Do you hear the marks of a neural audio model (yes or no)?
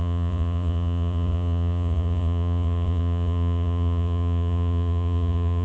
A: yes